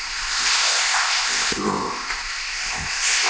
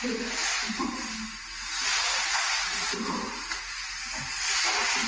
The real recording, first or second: second